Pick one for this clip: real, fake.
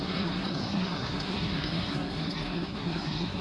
fake